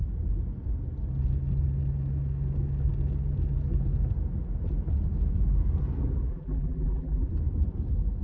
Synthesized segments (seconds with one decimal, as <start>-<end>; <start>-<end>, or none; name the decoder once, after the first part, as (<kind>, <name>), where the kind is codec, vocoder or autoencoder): 6.3-7.3 (vocoder, BigVGAN v2)